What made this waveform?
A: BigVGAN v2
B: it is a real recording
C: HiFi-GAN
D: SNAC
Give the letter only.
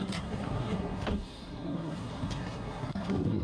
D